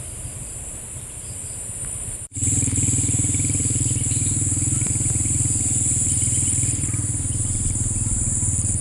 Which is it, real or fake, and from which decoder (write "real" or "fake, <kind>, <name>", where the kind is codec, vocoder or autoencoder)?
fake, vocoder, BigVGAN v2